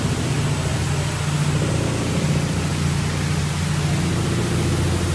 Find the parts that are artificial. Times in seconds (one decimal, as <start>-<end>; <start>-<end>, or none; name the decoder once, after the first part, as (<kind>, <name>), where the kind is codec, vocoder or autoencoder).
none